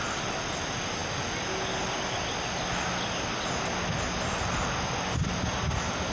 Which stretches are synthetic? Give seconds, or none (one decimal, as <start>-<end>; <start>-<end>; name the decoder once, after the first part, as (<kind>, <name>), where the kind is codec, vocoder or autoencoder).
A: none